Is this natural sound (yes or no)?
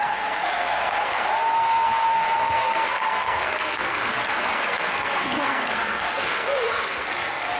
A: no